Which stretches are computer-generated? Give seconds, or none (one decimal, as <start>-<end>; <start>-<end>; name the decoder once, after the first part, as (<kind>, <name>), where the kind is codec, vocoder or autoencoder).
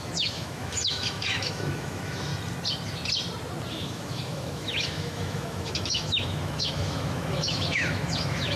0.0-2.3 (autoencoder, DAC-VAE); 3.7-8.6